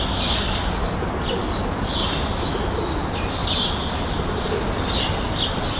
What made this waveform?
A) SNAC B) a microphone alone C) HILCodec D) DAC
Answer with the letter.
B